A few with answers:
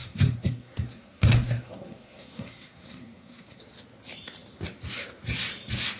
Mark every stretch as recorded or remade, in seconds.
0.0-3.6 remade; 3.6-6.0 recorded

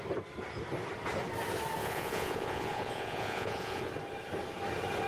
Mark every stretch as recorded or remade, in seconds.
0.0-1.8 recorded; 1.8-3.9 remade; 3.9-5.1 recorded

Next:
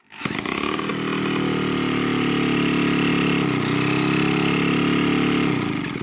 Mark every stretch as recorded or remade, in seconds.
0.0-6.0 recorded